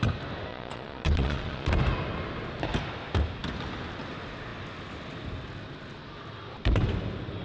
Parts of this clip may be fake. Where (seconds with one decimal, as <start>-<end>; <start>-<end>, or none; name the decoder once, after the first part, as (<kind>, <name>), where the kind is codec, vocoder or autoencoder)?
0.5-1.7 (vocoder, Vocos)